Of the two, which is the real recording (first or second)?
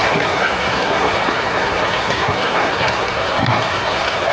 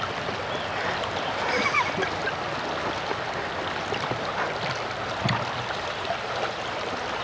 second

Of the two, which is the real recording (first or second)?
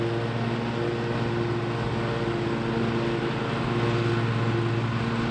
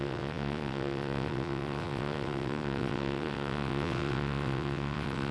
first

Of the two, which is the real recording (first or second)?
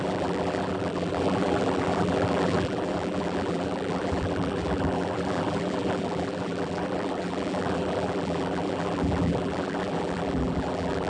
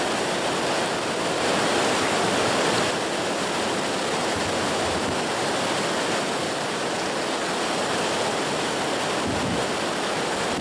second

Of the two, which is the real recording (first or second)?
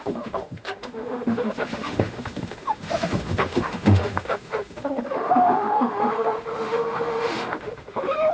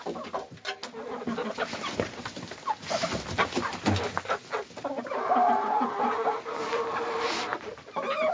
second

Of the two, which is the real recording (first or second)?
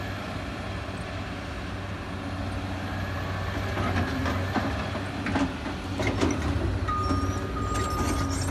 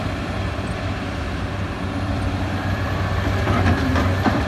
first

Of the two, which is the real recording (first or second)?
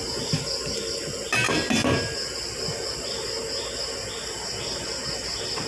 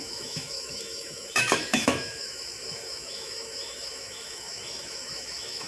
first